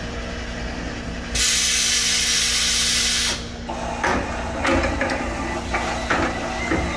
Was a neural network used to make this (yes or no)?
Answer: no